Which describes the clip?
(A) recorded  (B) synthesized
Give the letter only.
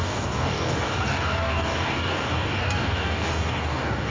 B